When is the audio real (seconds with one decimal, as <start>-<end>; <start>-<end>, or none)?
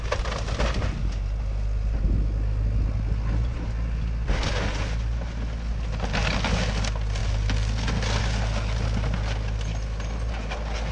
0.0-10.9